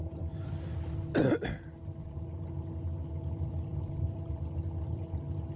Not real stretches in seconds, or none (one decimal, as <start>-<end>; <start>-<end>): 0.0-0.5; 3.7-4.3